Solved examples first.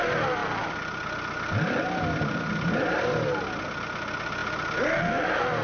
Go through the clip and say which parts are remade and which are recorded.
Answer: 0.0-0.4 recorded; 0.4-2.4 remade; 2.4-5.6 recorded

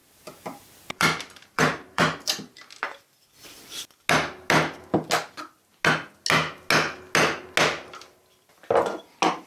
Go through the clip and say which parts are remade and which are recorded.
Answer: 0.0-3.0 remade; 3.0-9.5 recorded